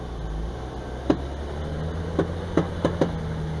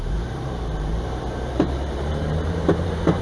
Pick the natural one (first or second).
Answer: first